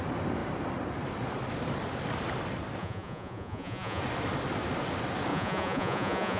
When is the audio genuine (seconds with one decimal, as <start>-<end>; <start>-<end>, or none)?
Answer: 0.0-2.8; 4.0-5.3